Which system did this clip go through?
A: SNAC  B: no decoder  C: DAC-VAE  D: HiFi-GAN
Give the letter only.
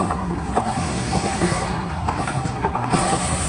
A